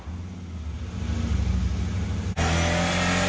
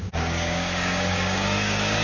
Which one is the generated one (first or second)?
second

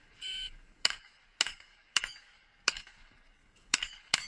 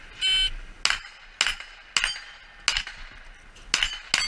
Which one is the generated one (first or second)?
first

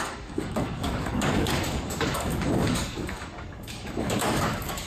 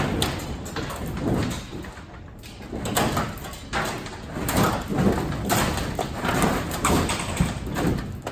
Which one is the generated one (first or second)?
first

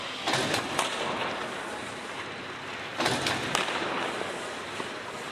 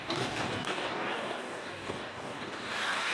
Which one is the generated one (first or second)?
second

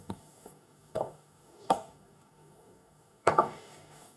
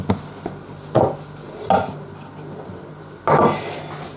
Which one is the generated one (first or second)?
first